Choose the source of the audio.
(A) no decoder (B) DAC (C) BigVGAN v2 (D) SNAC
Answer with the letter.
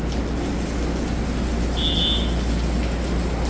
A